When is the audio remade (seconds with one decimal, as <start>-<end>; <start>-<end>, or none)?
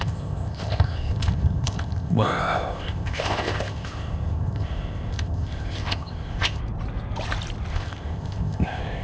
0.0-6.6; 7.7-9.0